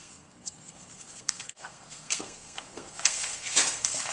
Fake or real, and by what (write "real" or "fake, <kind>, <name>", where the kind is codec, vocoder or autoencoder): fake, codec, SNAC